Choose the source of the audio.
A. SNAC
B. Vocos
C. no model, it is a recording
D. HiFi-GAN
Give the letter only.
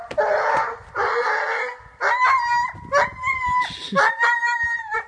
C